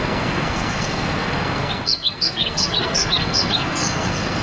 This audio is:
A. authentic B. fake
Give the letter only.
B